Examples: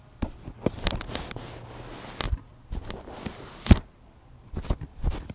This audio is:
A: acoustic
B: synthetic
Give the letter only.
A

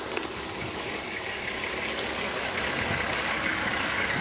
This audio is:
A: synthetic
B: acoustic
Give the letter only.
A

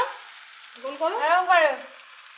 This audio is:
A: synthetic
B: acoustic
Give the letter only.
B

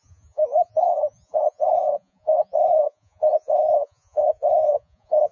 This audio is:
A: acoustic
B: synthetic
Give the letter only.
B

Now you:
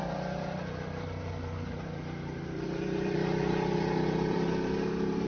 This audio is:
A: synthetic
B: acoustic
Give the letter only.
A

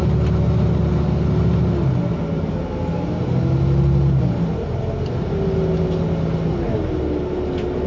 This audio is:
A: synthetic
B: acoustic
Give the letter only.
B